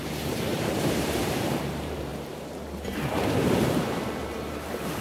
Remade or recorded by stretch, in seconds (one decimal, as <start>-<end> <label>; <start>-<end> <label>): 0.0-2.1 remade; 2.1-3.4 recorded; 3.4-5.0 remade